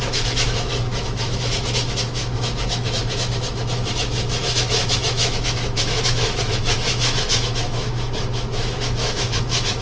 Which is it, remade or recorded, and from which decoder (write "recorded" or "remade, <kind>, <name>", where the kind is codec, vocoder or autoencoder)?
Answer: remade, autoencoder, DAC-VAE